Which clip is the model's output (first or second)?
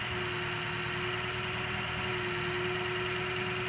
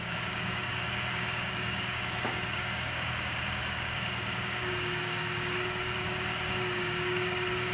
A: second